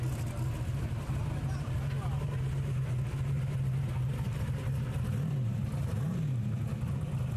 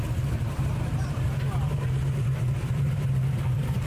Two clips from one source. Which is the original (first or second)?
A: first